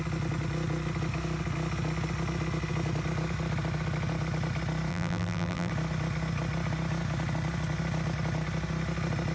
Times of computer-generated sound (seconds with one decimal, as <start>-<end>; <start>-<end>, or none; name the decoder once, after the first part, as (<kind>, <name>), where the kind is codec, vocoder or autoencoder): 4.9-5.7 (vocoder, BigVGAN v2)